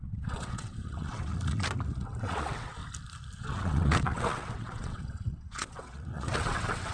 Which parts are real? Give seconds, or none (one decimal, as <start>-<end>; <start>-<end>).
1.3-2.2; 2.8-3.4